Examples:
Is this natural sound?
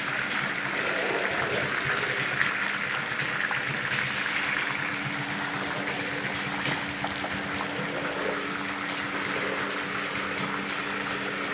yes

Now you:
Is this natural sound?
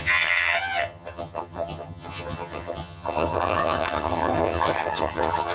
no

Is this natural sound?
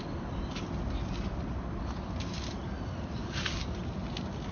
yes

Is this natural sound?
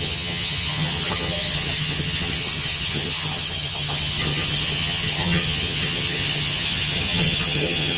no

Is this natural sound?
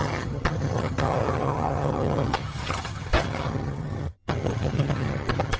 no